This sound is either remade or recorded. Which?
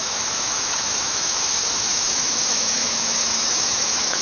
remade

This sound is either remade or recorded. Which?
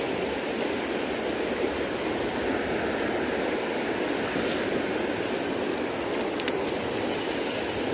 recorded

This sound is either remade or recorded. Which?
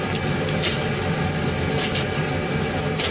recorded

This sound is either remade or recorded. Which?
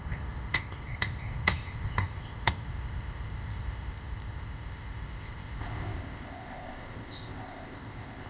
remade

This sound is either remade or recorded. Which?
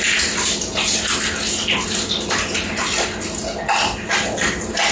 recorded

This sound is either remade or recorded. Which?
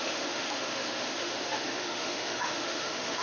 remade